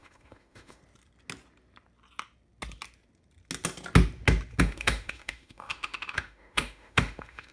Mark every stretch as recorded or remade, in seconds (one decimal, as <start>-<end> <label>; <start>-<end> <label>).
0.0-0.8 remade; 0.8-4.6 recorded; 4.6-7.5 remade